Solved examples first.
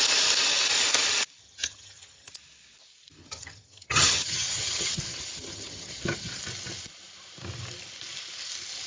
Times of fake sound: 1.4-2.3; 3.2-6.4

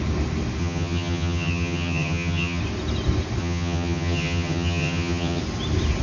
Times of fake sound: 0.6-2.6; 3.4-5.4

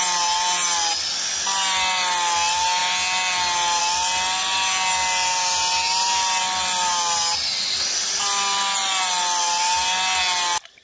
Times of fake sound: none

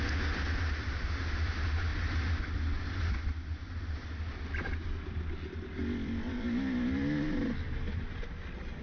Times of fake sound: none